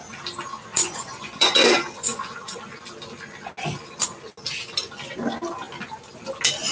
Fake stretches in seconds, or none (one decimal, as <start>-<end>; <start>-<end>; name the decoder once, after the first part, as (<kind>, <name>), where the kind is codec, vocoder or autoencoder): 0.7-1.7 (vocoder, Vocos)

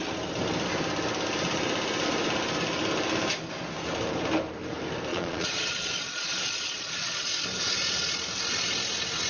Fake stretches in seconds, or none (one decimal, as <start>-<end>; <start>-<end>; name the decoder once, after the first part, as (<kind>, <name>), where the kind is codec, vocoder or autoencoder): 5.1-7.3 (vocoder, Vocos)

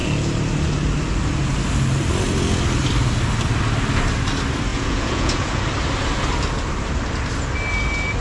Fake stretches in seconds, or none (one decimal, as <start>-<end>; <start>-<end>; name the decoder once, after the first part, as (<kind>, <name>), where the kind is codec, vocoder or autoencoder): 4.7-5.6 (vocoder, Vocos)

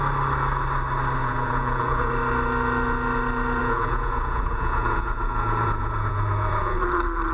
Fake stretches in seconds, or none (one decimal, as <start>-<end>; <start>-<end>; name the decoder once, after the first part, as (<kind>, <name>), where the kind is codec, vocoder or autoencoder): 1.2-2.1 (vocoder, Vocos); 3.6-6.8

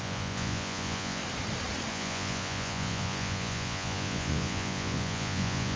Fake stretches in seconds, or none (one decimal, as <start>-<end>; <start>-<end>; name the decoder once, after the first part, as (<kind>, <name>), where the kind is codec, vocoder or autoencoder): 0.0-1.2 (vocoder, Vocos); 1.9-5.8

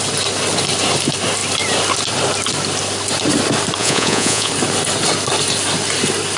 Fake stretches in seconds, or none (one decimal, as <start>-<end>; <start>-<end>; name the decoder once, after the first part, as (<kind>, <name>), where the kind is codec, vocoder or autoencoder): 3.8-4.5 (vocoder, Vocos)

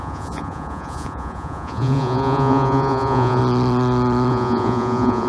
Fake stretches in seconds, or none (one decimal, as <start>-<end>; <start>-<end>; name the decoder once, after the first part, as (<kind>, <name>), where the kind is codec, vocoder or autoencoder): 0.0-3.4 (vocoder, Vocos); 4.3-5.3